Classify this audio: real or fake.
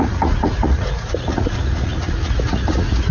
fake